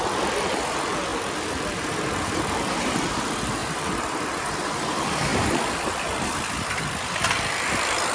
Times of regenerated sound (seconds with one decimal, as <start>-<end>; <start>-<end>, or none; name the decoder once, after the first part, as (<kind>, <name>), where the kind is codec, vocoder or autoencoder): 3.6-4.7 (vocoder, BigVGAN v2)